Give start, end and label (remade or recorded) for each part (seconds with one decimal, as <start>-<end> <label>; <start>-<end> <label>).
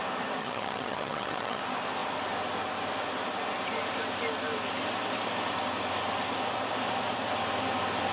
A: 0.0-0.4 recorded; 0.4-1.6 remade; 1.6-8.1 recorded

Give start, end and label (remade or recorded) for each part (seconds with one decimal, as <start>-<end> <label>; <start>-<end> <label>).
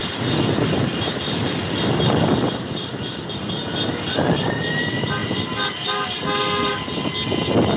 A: 0.0-7.8 recorded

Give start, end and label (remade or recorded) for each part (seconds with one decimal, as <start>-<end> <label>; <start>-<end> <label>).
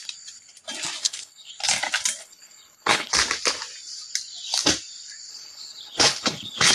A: 0.0-1.0 recorded; 1.0-1.5 remade; 1.5-2.2 recorded; 2.2-3.1 remade; 3.1-5.3 recorded; 5.3-6.7 remade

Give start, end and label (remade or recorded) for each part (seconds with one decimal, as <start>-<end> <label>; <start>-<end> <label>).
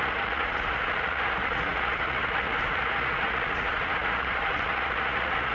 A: 0.0-5.5 remade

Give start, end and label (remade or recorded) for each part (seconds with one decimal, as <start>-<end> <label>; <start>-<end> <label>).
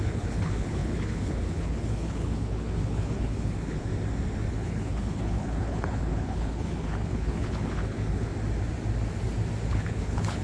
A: 0.0-3.9 remade; 3.9-4.5 recorded; 4.5-8.3 remade; 8.3-9.7 recorded; 9.7-10.4 remade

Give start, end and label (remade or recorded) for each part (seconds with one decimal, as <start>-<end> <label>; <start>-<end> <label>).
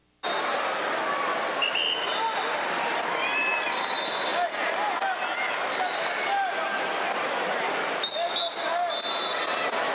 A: 0.0-9.9 recorded